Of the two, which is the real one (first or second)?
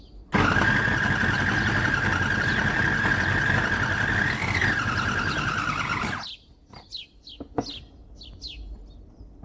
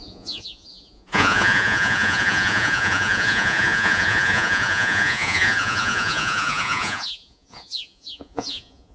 first